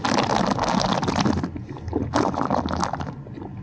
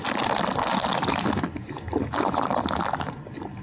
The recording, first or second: first